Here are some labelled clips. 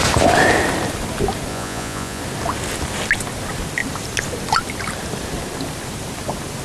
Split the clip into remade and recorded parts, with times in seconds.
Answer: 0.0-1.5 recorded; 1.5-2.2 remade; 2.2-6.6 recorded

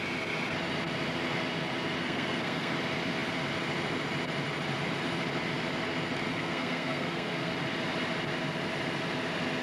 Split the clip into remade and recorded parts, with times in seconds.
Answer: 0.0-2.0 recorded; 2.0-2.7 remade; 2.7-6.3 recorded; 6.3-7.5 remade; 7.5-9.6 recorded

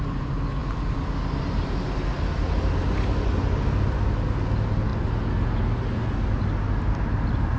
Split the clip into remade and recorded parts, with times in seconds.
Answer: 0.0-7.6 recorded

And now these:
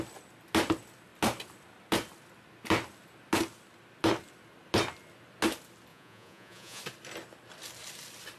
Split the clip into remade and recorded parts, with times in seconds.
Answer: 0.0-5.9 recorded; 5.9-6.8 remade; 6.8-8.4 recorded